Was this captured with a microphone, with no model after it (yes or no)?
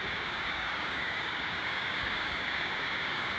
no